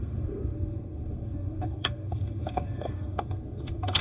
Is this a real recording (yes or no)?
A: no